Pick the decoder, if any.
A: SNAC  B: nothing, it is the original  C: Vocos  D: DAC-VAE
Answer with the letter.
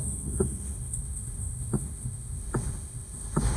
D